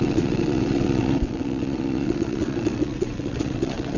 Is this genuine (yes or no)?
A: no